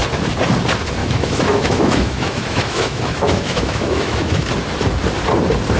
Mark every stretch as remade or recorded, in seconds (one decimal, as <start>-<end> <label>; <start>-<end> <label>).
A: 0.0-1.0 recorded; 1.0-4.5 remade; 4.5-5.8 recorded